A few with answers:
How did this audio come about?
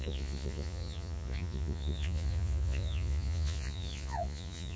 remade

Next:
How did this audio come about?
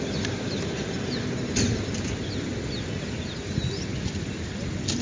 recorded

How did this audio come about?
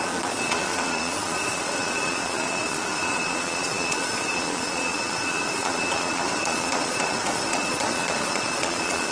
remade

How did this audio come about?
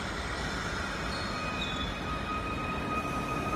recorded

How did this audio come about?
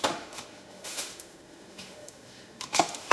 remade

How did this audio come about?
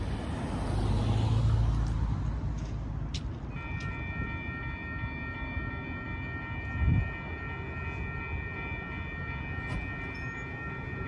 recorded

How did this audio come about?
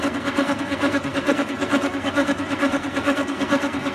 remade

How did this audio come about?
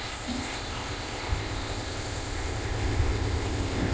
remade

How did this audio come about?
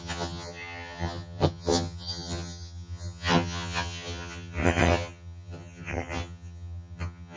remade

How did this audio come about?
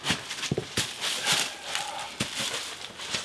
recorded